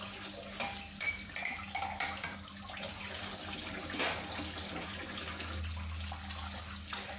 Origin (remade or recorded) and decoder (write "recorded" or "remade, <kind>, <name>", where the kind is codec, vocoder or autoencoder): recorded